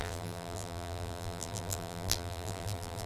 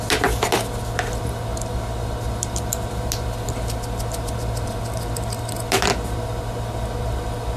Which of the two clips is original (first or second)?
second